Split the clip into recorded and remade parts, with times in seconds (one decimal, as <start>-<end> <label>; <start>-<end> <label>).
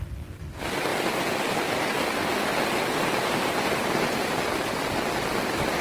0.0-5.8 recorded